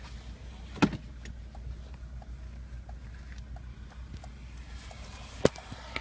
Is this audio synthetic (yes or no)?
no